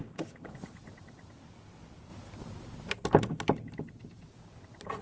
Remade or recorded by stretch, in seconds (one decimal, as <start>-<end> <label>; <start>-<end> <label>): 0.0-0.5 remade; 0.5-5.0 recorded